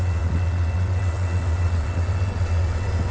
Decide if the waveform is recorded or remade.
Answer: remade